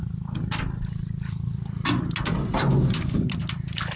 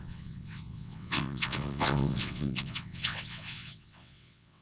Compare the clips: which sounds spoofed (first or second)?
second